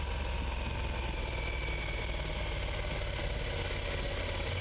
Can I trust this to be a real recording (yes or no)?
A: yes